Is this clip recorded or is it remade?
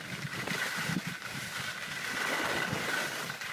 recorded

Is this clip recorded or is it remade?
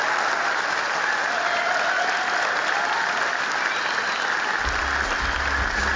recorded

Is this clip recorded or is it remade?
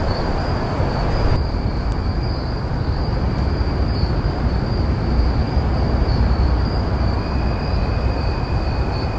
remade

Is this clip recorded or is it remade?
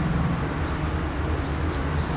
recorded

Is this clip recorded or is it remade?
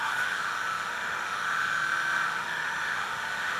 remade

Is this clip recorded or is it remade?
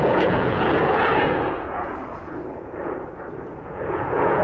remade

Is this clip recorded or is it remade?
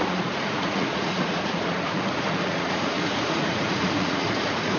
remade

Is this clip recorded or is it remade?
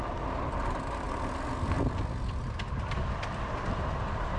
remade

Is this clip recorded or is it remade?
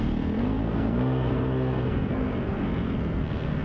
remade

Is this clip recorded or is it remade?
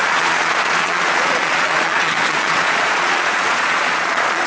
remade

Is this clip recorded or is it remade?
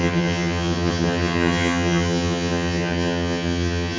remade